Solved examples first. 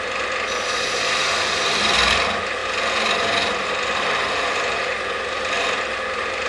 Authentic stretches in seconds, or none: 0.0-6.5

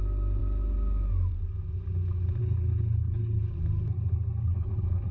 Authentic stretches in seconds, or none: 0.0-2.4; 3.4-4.4

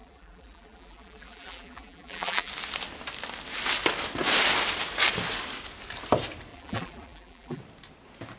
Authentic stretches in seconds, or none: 2.5-6.5; 7.6-8.4

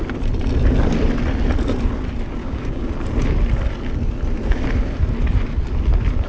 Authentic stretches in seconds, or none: 0.0-2.4; 2.9-6.3

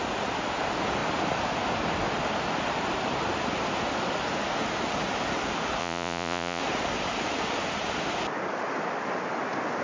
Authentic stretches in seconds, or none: 0.0-5.8; 6.6-9.8

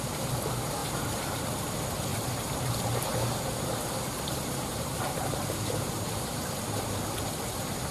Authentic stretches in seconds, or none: 0.0-0.8; 1.7-2.1; 6.4-7.9

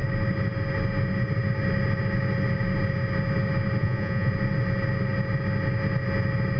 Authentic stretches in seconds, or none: 0.0-3.8; 4.3-6.6

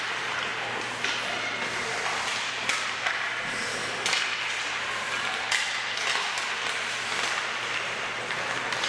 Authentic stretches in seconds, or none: 0.0-8.9